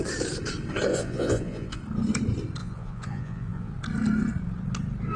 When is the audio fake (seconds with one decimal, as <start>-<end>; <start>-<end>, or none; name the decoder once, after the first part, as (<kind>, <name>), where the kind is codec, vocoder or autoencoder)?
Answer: 0.9-1.8 (vocoder, Vocos); 2.6-3.7